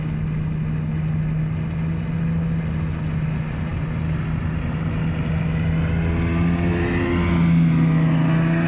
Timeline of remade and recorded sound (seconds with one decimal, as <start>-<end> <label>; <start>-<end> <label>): 0.0-8.7 recorded